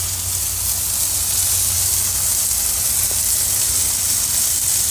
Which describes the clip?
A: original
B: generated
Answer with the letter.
A